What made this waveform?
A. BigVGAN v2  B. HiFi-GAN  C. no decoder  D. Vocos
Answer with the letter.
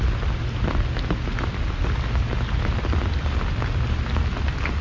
C